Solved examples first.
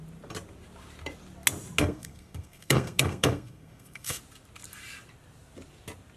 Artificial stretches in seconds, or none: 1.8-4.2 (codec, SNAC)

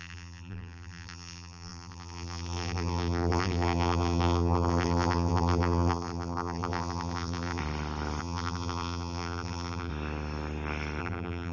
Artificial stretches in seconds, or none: 0.0-7.6 (vocoder, BigVGAN v2); 8.2-9.9; 11.0-11.5

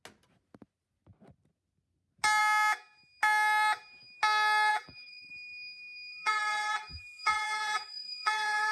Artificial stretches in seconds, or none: 4.7-5.3 (vocoder, BigVGAN v2); 6.1-8.7

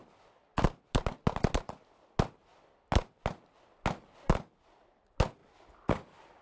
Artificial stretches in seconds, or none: none

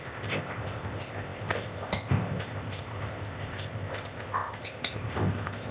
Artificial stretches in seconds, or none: 0.0-5.7 (codec, ZipCodec)

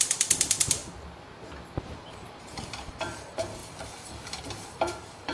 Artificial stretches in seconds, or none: 0.0-0.8 (vocoder, BigVGAN v2); 1.8-5.3